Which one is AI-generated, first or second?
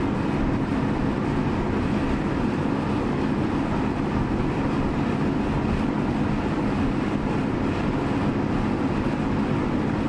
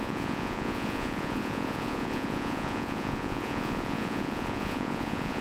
second